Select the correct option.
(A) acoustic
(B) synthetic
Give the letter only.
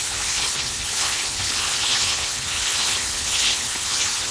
B